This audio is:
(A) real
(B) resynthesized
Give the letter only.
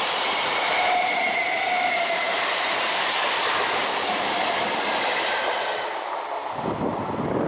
B